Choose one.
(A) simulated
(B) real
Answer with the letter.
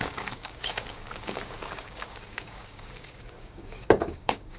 A